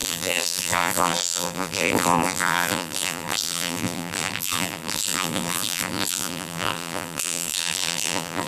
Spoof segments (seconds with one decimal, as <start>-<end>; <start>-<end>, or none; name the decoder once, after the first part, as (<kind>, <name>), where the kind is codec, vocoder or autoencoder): 0.0-8.5 (vocoder, BigVGAN v2)